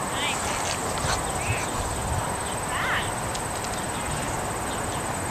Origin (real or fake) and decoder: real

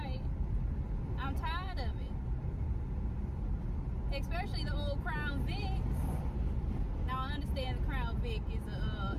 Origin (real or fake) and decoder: real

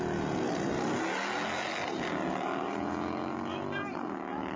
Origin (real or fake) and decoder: real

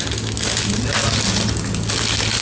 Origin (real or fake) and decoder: real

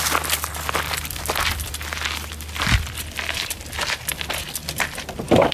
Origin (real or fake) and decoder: fake, vocoder, BigVGAN v2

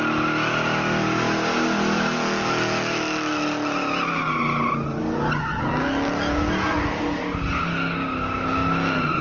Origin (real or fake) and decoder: real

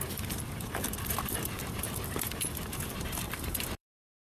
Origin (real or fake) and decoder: fake, vocoder, BigVGAN v2